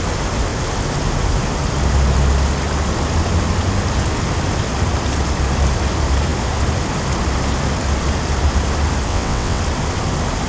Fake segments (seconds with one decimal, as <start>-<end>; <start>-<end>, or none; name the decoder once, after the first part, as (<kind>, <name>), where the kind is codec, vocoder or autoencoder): 9.1-9.6 (vocoder, WaveNeXt)